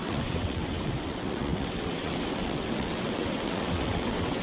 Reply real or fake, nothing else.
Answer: fake